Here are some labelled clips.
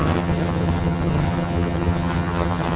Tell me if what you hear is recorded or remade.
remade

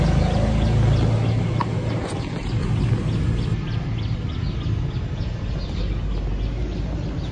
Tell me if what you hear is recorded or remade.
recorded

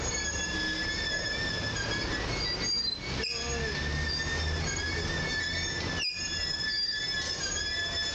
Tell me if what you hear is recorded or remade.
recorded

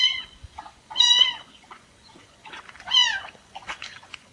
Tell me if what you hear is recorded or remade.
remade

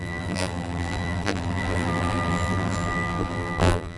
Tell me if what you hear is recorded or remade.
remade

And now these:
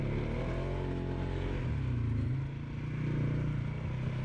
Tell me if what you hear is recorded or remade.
recorded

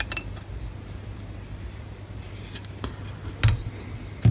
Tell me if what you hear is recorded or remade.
recorded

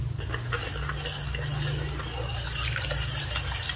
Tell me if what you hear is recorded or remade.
recorded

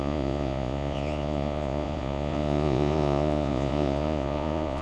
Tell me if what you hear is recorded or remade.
remade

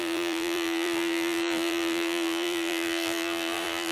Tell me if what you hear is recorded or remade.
remade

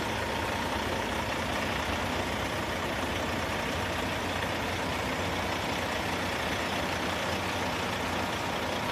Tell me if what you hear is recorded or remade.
recorded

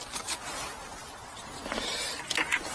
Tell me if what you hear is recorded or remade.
recorded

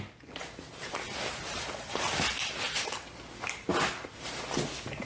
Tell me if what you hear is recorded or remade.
recorded